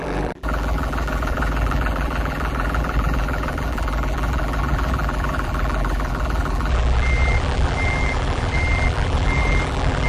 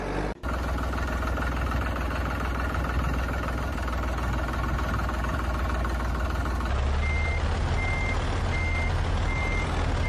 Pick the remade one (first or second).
first